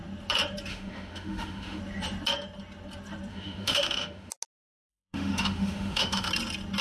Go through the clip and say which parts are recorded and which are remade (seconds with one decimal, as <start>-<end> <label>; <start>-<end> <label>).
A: 0.0-0.7 recorded; 0.7-1.8 remade; 1.8-3.3 recorded; 3.3-4.3 remade; 4.3-4.9 recorded; 4.9-6.3 remade; 6.3-6.8 recorded